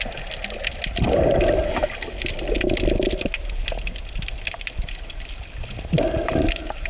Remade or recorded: recorded